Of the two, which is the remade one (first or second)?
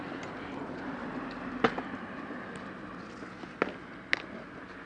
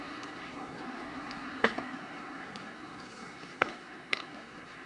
second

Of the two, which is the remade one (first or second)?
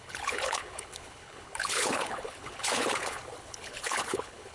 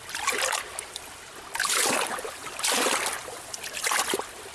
first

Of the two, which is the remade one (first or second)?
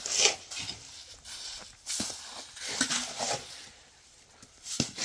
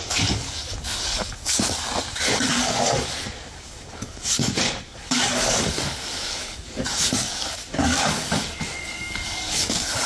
second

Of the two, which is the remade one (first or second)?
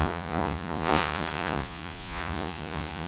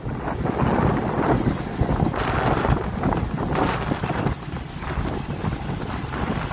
first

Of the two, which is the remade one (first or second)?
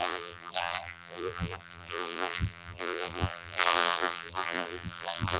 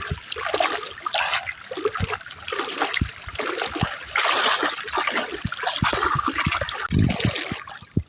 first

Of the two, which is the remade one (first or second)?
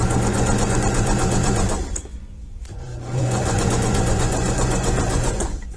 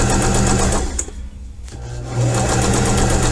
first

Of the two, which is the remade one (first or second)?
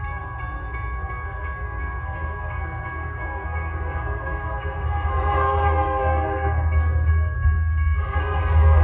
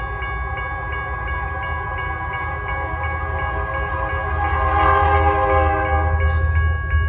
first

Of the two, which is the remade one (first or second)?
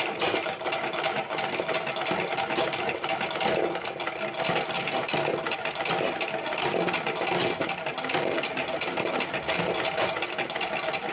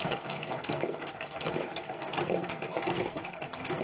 second